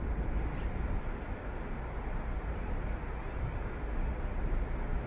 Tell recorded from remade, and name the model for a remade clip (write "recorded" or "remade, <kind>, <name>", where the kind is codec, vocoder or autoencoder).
recorded